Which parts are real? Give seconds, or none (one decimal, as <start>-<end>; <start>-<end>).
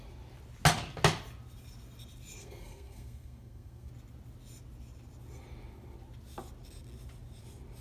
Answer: 0.0-2.4; 3.9-7.8